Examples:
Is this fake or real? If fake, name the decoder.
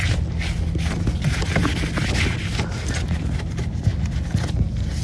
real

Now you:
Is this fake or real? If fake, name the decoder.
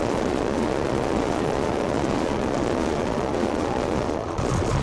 fake, vocoder, Vocos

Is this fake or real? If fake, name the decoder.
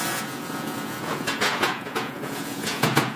fake, vocoder, Vocos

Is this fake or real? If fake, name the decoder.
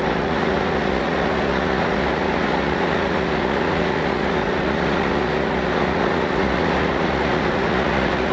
fake, vocoder, Vocos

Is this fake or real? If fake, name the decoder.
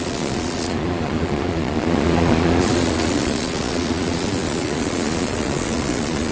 fake, vocoder, Vocos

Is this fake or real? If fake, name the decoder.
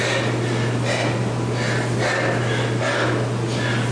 real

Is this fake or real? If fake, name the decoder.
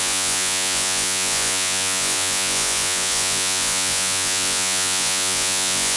fake, vocoder, Vocos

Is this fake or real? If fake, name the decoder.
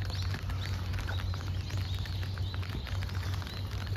real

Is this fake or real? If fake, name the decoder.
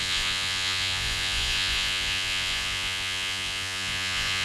fake, vocoder, Vocos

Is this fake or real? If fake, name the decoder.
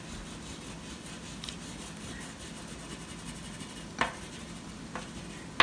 real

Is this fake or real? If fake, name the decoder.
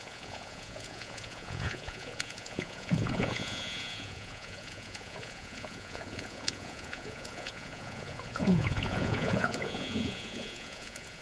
fake, vocoder, Vocos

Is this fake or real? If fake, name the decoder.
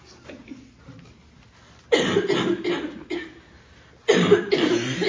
real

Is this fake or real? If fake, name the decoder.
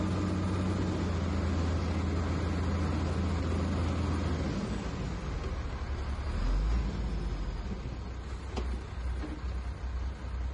real